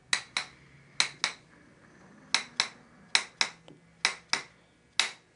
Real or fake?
real